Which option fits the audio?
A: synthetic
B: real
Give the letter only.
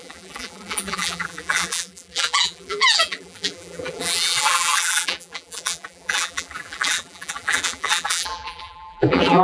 A